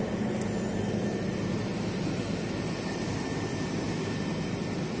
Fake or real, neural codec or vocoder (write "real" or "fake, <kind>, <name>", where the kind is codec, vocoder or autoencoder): real